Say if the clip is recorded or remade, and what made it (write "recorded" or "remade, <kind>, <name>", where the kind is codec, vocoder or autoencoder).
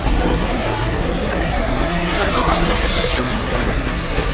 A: remade, codec, SNAC